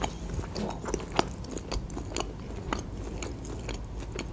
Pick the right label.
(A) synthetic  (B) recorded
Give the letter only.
B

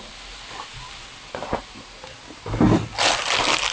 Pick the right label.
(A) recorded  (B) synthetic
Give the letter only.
A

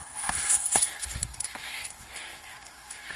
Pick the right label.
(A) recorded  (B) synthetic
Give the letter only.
B